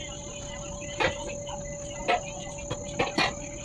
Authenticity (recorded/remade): recorded